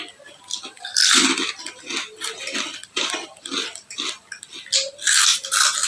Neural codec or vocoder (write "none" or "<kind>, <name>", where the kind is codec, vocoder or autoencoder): none